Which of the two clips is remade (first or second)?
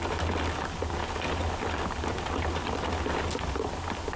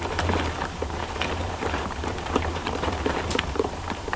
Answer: second